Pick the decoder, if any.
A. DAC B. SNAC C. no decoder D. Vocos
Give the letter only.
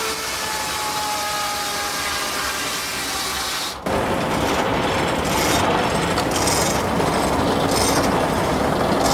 C